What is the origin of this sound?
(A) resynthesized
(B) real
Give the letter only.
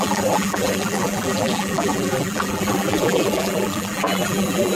A